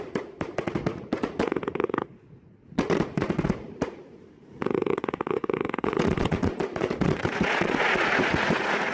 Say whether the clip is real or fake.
fake